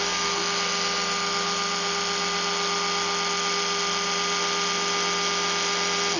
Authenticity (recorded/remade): recorded